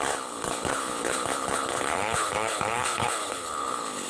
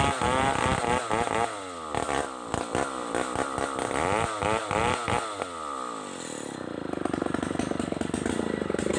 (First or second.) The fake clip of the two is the first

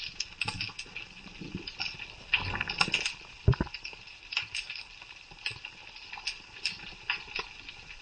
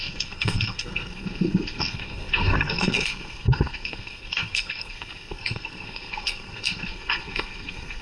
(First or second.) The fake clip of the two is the second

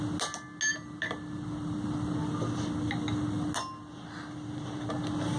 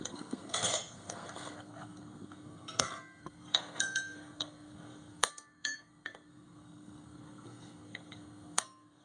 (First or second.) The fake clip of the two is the second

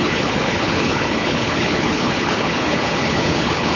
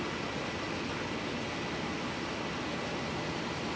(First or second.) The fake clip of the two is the first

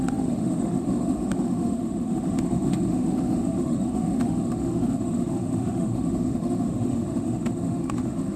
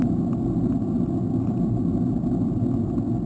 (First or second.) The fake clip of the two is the first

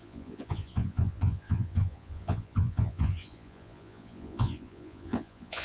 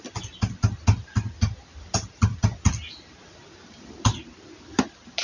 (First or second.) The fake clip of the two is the first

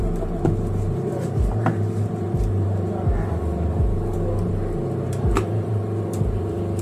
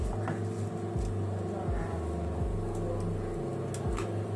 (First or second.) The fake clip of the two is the first